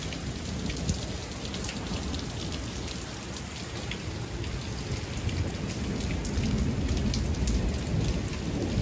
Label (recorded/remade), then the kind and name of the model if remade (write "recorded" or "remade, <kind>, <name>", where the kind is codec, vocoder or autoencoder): recorded